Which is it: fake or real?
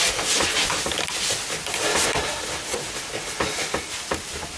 real